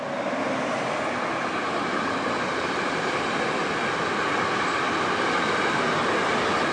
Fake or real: real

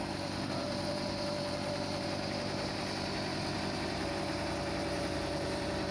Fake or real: fake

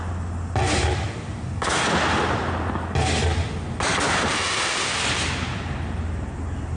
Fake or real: real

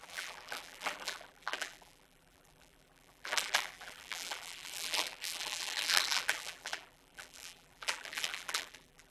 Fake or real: fake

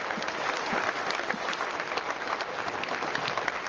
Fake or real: real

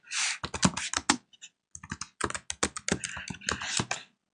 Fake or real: real